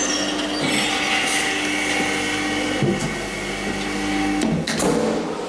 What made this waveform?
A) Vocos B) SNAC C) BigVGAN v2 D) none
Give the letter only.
D